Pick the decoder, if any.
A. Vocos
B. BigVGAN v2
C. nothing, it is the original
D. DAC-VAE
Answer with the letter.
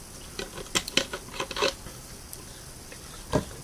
C